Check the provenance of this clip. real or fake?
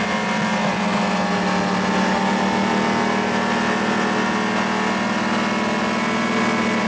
real